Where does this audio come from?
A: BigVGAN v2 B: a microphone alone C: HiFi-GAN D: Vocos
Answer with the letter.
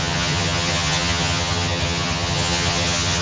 C